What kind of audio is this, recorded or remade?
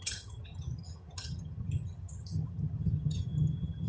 remade